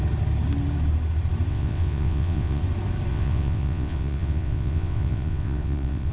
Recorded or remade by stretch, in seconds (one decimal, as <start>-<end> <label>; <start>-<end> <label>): 0.0-1.5 recorded; 1.5-2.6 remade; 2.6-3.1 recorded; 3.1-6.1 remade